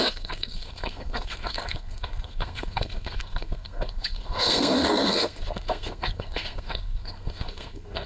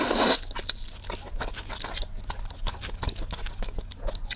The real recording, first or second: second